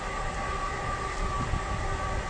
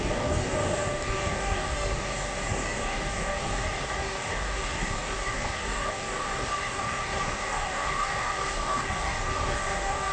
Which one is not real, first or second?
second